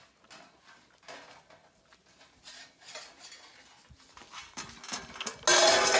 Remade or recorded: recorded